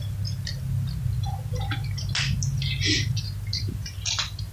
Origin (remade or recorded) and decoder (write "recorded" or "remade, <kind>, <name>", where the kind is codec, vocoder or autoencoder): recorded